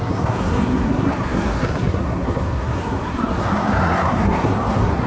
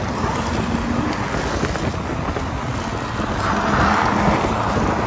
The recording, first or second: second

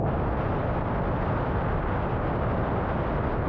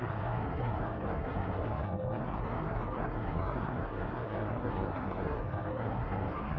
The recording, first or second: first